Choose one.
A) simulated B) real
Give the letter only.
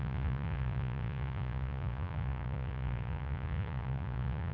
A